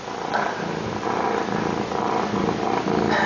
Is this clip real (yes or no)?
yes